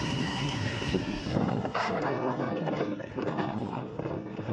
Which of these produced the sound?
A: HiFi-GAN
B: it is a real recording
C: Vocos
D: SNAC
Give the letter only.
D